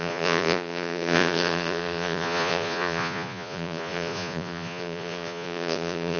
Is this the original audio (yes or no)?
no